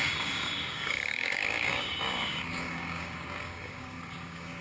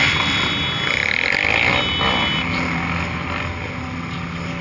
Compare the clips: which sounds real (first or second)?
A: second